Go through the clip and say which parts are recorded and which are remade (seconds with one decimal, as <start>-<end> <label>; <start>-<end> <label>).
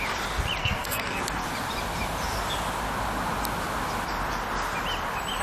0.0-0.6 recorded; 0.6-1.2 remade; 1.2-5.4 recorded